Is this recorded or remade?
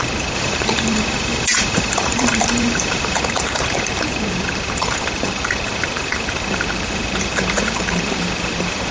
remade